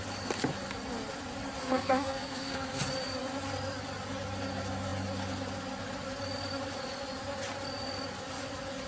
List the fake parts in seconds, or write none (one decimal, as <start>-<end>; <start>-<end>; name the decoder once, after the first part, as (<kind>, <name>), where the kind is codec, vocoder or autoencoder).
1.6-2.8 (codec, SNAC)